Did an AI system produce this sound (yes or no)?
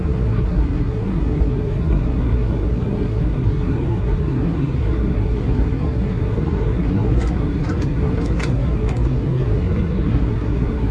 yes